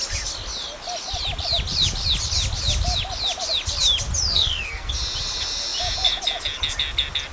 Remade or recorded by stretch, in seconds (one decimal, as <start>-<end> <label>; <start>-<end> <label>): 0.0-4.3 recorded; 4.3-4.9 remade; 4.9-7.3 recorded